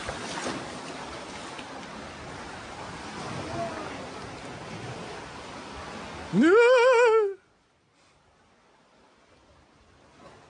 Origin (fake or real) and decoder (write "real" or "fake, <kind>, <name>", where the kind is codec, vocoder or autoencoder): real